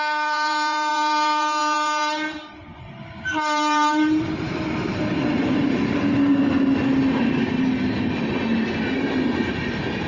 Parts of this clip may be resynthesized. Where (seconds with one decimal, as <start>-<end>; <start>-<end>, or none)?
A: 0.0-6.3; 9.4-10.1